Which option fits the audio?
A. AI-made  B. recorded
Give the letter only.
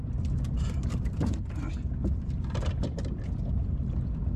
B